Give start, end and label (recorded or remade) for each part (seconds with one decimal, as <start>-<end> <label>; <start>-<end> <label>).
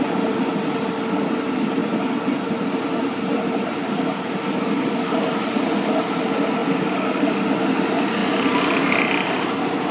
0.0-9.9 recorded